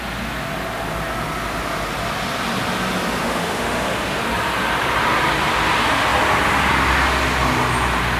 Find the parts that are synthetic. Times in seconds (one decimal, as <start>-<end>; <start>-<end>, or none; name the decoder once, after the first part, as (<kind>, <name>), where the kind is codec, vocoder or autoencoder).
3.2-4.2 (autoencoder, DAC-VAE)